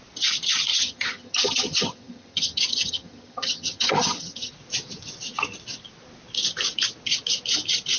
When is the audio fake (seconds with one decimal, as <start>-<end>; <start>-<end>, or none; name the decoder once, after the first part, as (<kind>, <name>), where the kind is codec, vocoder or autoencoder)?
0.7-4.5 (vocoder, HiFi-GAN)